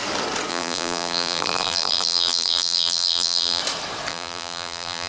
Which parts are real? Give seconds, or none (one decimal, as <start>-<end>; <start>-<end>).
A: 0.0-0.5; 3.6-4.1